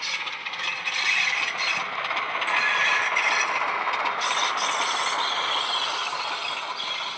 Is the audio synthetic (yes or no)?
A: no